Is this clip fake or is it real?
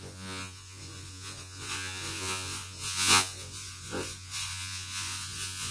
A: fake